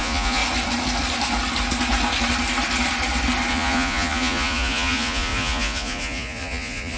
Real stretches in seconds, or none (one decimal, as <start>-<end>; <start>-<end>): 0.4-3.5